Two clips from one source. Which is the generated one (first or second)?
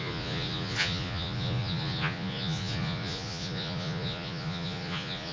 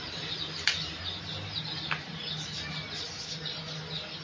first